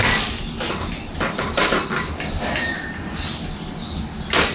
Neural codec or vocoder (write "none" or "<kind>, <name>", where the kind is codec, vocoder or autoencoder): none